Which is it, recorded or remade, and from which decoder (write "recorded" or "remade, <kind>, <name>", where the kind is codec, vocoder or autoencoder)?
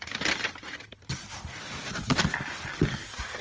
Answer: recorded